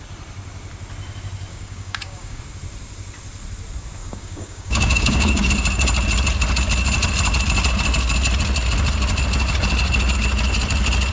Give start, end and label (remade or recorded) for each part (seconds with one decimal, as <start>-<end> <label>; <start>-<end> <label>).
0.0-1.5 recorded; 1.5-2.4 remade; 2.4-4.0 recorded; 4.0-5.5 remade; 5.5-11.1 recorded

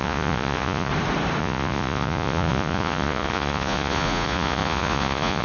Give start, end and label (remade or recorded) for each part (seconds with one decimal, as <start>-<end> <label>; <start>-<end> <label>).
0.0-0.9 remade; 0.9-1.4 recorded; 1.4-5.4 remade

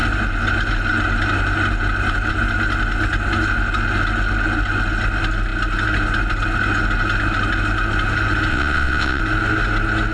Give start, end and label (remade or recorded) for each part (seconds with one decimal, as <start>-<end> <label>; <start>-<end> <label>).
0.0-8.5 recorded; 8.5-9.2 remade; 9.2-10.1 recorded